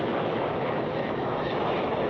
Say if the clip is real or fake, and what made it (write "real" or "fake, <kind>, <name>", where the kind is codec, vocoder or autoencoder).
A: fake, autoencoder, DAC-VAE